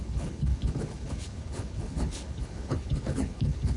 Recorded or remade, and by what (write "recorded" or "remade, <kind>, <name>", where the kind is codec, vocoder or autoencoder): remade, codec, HILCodec